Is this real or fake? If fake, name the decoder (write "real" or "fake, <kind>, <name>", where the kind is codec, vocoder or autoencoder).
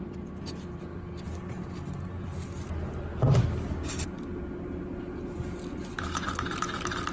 real